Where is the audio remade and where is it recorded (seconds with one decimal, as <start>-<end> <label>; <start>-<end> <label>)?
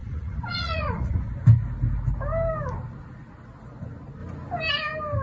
0.0-1.3 remade; 1.3-5.2 recorded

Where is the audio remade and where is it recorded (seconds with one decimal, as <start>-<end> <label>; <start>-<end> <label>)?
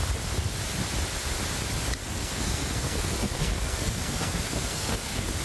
0.0-2.0 recorded; 2.0-5.4 remade